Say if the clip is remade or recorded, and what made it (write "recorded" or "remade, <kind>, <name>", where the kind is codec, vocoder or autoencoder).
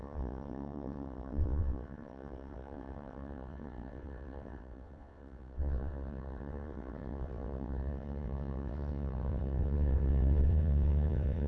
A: remade, vocoder, WaveNeXt